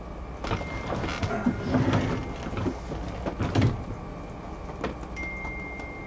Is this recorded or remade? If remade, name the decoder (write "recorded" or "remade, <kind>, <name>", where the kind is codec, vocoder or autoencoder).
recorded